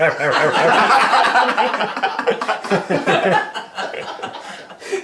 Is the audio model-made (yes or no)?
no